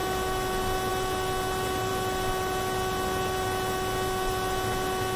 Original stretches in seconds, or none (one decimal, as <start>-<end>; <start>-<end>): 0.0-5.2